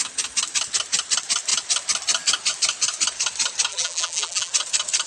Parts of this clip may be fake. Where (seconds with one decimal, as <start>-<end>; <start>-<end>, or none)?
3.7-4.5

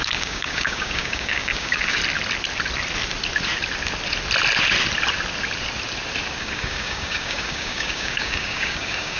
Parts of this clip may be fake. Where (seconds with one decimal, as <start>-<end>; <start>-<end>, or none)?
0.0-2.0; 6.4-9.2